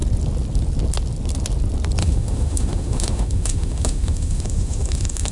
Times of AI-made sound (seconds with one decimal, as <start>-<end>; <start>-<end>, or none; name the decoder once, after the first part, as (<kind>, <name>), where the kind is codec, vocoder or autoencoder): 2.0-5.3 (autoencoder, DAC-VAE)